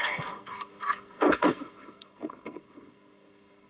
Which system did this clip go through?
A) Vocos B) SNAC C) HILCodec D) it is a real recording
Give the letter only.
B